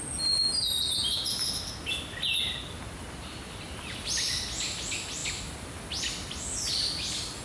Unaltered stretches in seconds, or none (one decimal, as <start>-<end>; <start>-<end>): 0.0-7.4